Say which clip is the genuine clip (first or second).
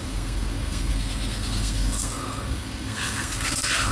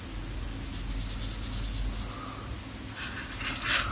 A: second